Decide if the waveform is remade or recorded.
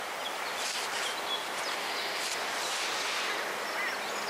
recorded